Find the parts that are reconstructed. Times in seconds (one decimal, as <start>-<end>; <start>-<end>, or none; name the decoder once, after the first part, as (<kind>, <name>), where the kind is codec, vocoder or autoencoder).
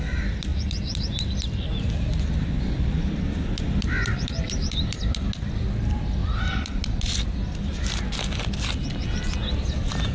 0.5-5.3 (vocoder, BigVGAN v2); 6.2-6.8